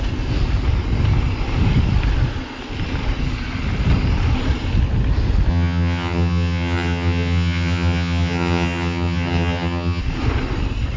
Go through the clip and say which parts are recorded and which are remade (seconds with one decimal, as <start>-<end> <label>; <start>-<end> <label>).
0.0-5.5 recorded; 5.5-10.0 remade; 10.0-11.0 recorded